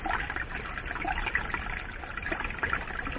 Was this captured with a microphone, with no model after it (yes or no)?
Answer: yes